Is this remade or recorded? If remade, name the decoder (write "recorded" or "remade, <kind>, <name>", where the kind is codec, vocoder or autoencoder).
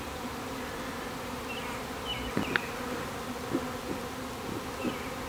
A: recorded